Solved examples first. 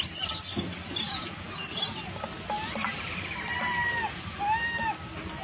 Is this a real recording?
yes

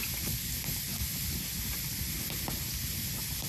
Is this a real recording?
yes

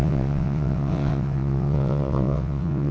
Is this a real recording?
no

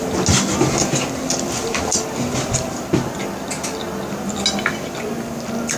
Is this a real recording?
yes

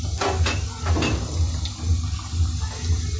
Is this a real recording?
yes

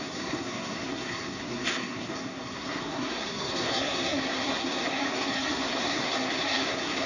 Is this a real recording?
no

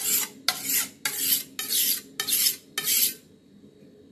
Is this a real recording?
yes